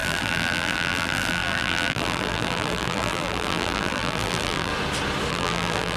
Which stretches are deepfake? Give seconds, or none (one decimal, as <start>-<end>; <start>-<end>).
0.0-4.7; 5.3-6.0